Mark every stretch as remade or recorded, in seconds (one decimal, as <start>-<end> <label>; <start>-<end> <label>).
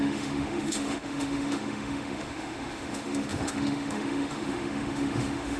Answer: 0.0-5.6 remade